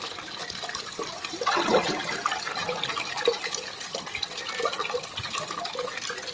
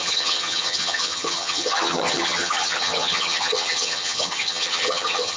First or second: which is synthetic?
second